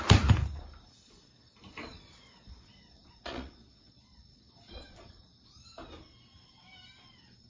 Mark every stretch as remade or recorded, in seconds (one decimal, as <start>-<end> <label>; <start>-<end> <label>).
0.0-1.9 recorded; 1.9-5.2 remade; 5.2-7.5 recorded